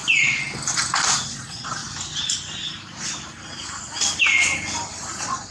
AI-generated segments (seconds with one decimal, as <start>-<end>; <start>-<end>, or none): 1.3-1.8; 5.1-5.5